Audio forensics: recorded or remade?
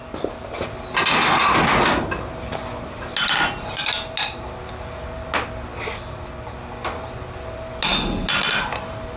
recorded